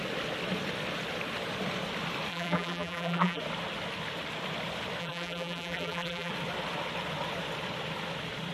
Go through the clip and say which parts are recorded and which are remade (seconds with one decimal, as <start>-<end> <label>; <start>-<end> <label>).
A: 0.0-2.3 recorded; 2.3-3.4 remade; 3.4-5.0 recorded; 5.0-6.3 remade; 6.3-8.5 recorded